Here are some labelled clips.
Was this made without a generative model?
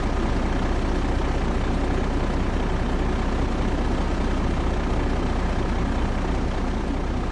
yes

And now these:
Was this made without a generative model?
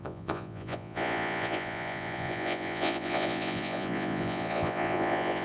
no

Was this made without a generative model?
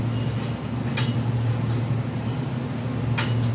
yes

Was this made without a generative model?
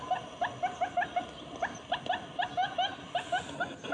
yes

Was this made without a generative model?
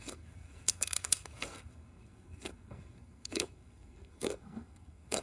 no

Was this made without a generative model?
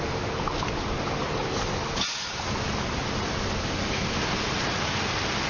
yes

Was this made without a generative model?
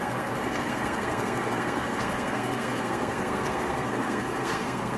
no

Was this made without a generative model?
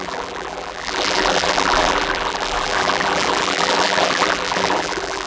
no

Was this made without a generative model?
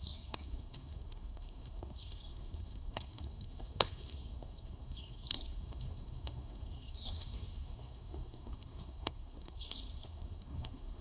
no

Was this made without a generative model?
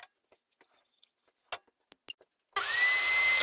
yes